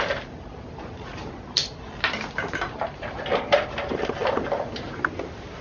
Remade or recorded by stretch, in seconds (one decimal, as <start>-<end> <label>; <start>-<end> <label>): 0.0-1.6 remade; 1.6-3.4 recorded; 3.4-5.6 remade

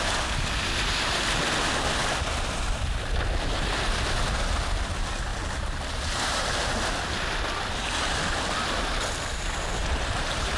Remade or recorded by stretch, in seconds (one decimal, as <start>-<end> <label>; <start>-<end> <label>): 0.0-5.3 recorded; 5.3-6.2 remade; 6.2-9.8 recorded; 9.8-10.6 remade

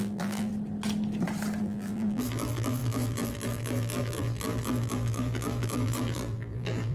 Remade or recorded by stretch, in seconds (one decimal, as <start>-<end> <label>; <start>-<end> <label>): 0.0-0.5 remade; 0.5-1.6 recorded; 1.6-6.9 remade

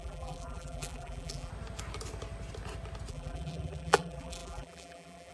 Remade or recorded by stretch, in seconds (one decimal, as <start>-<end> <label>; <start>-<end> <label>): 0.0-1.5 remade; 1.5-3.1 recorded; 3.1-5.3 remade

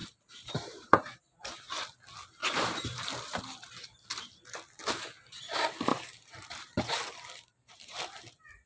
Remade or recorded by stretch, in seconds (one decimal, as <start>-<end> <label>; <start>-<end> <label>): 0.0-1.2 remade; 1.2-2.4 recorded; 2.4-3.7 remade; 3.7-5.9 recorded; 5.9-8.2 remade; 8.2-8.7 recorded